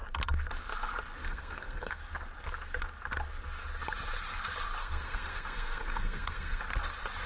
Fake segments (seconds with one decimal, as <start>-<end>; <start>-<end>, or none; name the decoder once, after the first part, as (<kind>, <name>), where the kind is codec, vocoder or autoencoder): 1.2-2.0 (codec, SNAC); 4.8-6.6